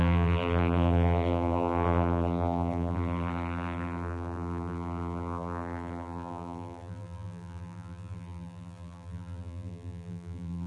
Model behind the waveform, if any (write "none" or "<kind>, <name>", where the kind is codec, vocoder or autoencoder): vocoder, BigVGAN v2